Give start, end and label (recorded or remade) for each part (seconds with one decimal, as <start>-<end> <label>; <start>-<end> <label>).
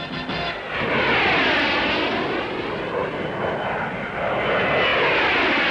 0.0-5.7 recorded